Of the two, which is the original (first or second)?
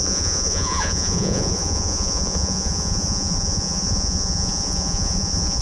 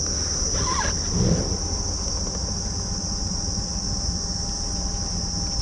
second